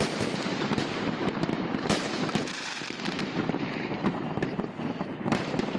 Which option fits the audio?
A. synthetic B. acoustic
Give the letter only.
A